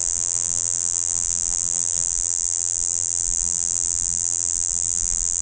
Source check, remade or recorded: remade